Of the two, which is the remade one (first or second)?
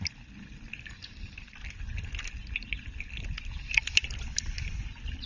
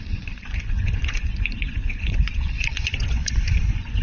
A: second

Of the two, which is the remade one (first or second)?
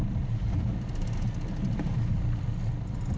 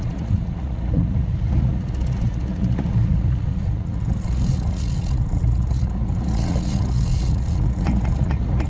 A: second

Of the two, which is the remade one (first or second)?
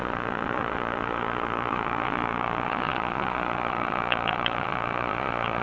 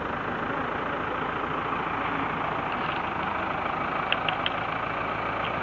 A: first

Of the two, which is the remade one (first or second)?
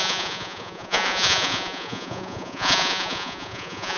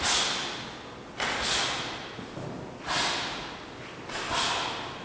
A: first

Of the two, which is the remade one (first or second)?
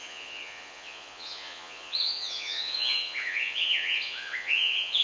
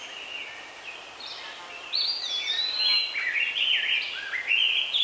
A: first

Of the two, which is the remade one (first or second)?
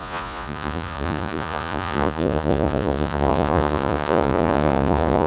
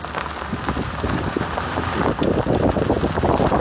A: first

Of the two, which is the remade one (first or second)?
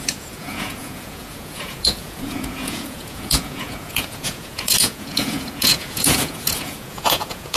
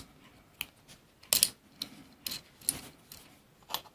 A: first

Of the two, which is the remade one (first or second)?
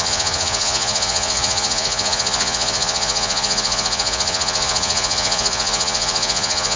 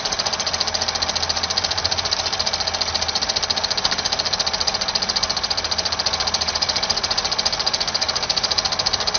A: first